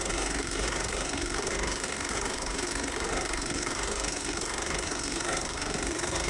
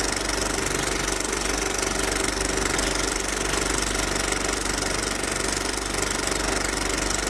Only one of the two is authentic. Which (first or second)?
second